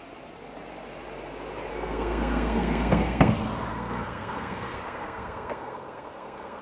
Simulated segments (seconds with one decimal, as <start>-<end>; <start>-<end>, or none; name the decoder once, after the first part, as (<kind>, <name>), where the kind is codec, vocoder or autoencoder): 1.7-3.3 (codec, SNAC); 3.7-6.6